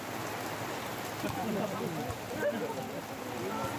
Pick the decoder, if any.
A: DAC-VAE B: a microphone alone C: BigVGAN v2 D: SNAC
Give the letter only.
B